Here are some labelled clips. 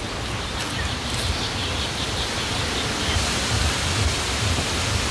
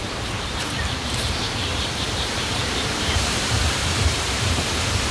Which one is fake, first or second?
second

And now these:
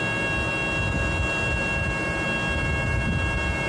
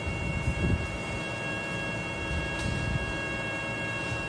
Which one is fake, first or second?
second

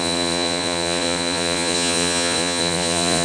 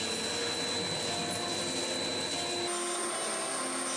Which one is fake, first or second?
first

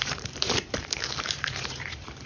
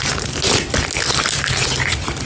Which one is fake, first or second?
first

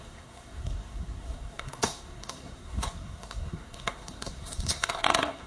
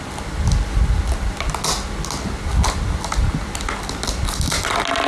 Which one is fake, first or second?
first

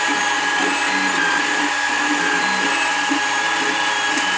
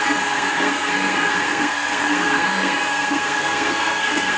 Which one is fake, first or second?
second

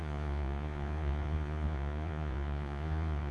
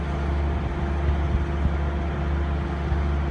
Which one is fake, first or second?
first